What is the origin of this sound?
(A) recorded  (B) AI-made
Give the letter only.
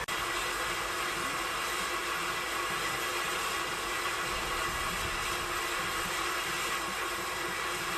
A